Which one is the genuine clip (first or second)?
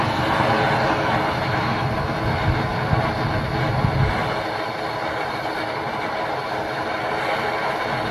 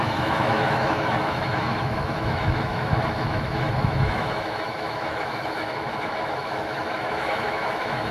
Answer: first